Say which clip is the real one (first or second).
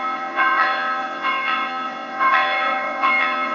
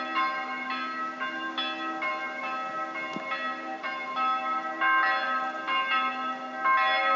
second